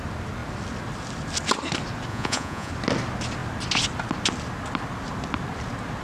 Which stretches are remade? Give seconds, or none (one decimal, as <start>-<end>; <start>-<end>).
2.1-2.7